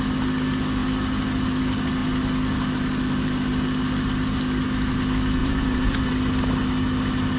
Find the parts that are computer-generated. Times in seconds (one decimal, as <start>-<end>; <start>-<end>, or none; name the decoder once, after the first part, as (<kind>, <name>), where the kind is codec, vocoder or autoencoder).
5.4-6.1 (vocoder, BigVGAN v2)